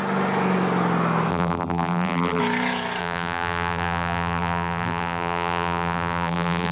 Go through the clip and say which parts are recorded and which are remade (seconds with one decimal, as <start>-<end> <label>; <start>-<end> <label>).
0.0-1.3 recorded; 1.3-2.4 remade; 2.4-3.0 recorded; 3.0-6.7 remade